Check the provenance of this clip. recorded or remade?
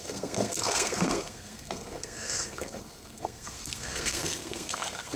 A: remade